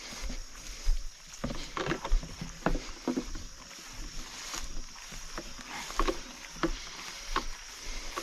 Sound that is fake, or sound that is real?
real